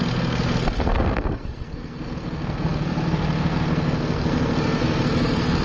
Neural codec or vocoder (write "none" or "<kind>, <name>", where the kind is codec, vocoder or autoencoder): codec, SNAC